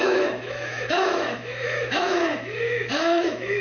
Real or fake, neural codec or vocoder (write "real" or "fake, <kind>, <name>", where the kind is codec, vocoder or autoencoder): fake, autoencoder, DAC-VAE